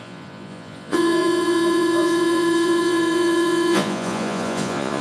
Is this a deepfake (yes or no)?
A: yes